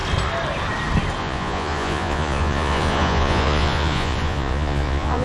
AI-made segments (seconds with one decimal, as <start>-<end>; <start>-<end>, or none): 1.2-5.2